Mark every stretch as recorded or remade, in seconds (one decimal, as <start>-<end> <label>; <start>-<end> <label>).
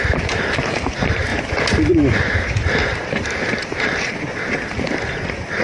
0.0-2.9 recorded; 2.9-3.9 remade; 3.9-5.6 recorded